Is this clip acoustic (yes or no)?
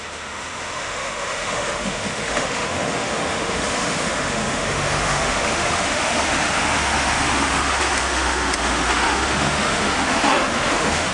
no